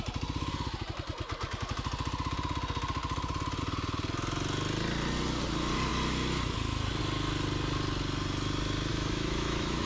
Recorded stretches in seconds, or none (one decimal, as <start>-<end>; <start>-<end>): 0.0-8.9